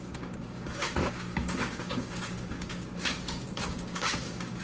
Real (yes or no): no